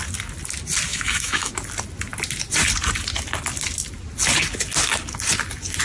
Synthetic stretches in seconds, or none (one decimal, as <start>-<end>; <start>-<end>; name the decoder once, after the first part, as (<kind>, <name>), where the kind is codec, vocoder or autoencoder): 0.9-1.5 (autoencoder, DAC-VAE)